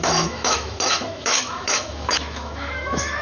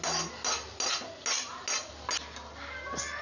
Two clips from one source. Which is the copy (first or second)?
first